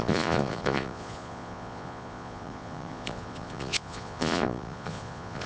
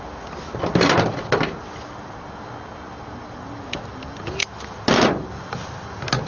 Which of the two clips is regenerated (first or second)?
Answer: first